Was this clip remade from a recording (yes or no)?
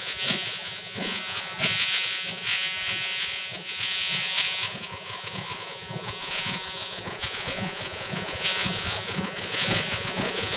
yes